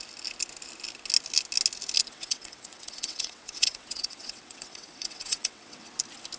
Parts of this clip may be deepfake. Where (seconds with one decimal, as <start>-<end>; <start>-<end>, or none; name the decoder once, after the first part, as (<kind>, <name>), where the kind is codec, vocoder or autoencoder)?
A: 2.1-5.9 (vocoder, WaveNeXt)